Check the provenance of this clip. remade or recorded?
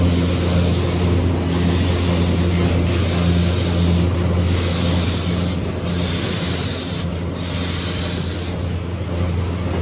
recorded